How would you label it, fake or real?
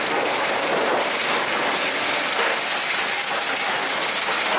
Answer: real